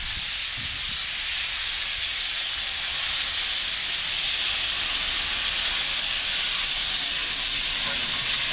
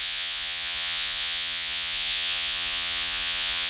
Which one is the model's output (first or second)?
second